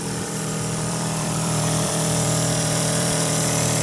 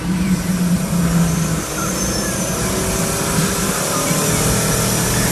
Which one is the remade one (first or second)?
first